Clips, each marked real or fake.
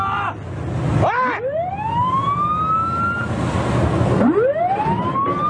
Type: real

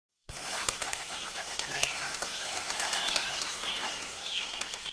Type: fake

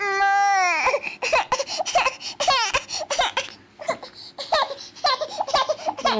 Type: real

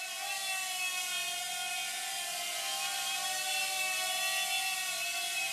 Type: real